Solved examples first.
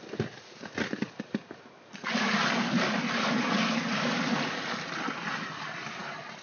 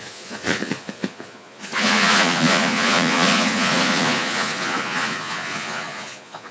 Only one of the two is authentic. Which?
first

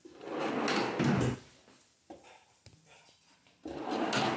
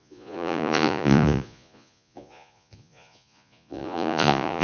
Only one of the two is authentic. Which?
first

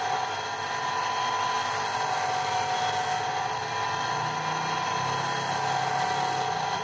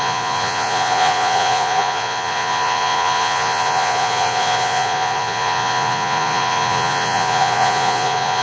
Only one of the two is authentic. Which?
first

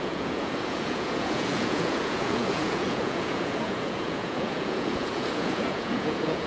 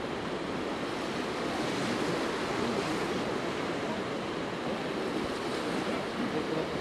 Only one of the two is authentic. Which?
second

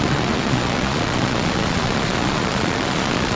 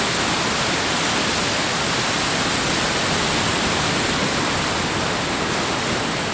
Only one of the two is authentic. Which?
second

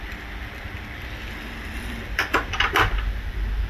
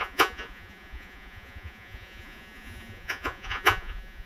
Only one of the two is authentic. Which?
first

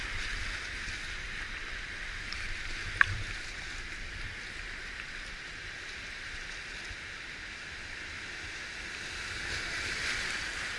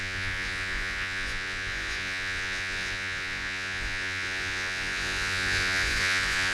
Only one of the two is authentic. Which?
first